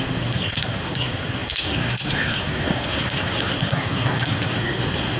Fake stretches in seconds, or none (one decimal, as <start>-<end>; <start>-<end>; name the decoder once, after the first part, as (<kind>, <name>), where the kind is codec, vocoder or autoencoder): 0.0-5.2 (codec, SNAC)